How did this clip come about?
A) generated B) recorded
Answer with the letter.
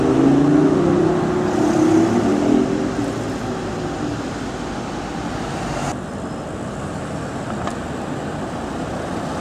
B